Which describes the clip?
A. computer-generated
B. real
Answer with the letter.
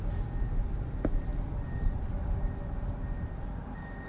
B